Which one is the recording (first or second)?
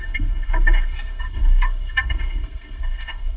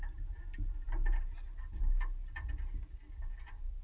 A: second